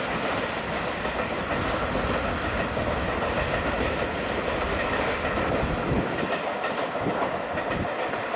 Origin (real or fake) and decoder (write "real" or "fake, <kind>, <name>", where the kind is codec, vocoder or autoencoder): real